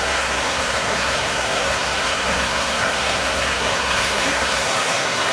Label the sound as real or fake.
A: fake